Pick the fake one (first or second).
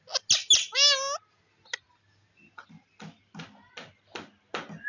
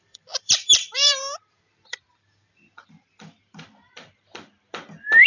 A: second